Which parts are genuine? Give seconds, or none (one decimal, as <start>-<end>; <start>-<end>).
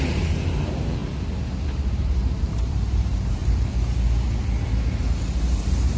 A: 1.0-1.6; 3.4-5.5